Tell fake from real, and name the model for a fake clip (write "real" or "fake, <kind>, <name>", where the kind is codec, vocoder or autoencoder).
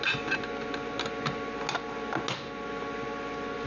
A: real